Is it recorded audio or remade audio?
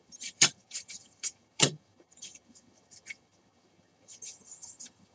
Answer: remade